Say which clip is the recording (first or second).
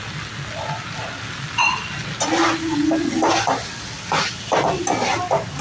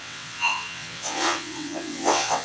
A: first